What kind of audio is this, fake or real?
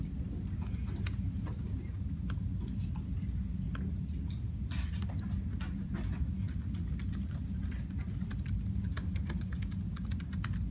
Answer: real